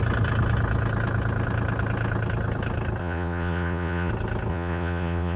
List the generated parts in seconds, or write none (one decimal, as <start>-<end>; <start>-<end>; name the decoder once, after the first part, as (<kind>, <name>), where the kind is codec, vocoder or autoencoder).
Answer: 3.0-4.1 (vocoder, Vocos); 4.5-5.4